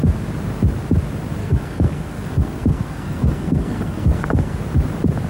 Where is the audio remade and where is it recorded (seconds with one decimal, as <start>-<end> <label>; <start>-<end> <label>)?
0.0-1.4 recorded; 1.4-4.6 remade; 4.6-5.3 recorded